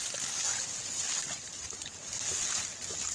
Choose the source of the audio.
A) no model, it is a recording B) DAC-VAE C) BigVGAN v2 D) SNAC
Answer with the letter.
A